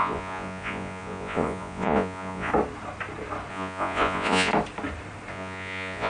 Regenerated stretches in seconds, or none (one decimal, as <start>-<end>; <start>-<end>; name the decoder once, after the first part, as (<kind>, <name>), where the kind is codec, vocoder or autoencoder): 0.0-2.5 (vocoder, Vocos); 3.5-4.5; 5.3-6.1